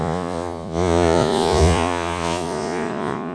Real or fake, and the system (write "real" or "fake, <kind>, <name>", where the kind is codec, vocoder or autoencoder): fake, vocoder, Vocos